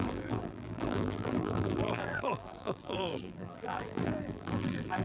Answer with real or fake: fake